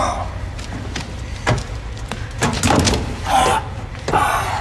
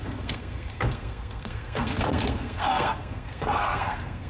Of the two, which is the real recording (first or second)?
first